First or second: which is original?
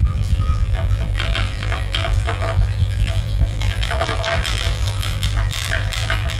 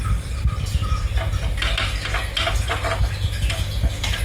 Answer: second